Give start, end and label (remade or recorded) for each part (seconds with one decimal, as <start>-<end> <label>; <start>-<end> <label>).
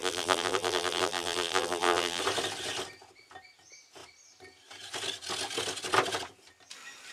0.0-2.2 remade; 2.2-7.1 recorded